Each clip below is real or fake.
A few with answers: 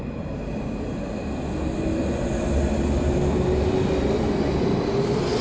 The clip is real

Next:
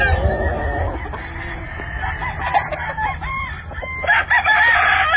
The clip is real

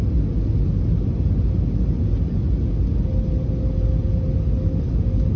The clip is real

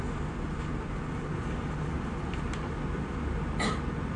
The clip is real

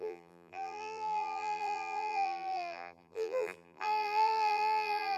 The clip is fake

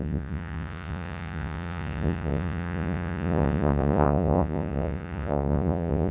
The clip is fake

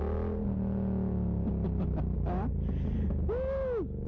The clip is real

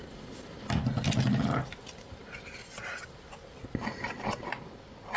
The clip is real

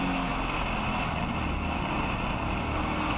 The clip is real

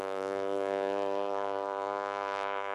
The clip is fake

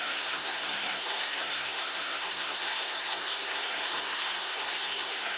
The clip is fake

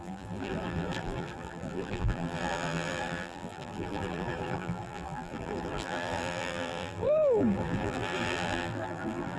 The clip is fake